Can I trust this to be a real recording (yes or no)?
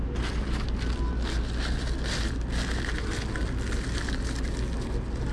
yes